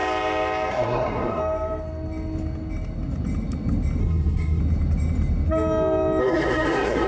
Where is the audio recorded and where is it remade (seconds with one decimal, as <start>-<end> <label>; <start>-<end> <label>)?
0.0-0.7 recorded; 0.7-1.4 remade; 1.4-4.0 recorded; 4.0-4.6 remade; 4.6-6.2 recorded; 6.2-7.1 remade